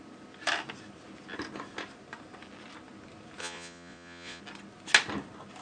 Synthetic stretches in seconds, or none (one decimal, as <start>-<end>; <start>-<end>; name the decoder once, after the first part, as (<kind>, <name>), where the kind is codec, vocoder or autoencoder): 3.4-4.4 (vocoder, Vocos)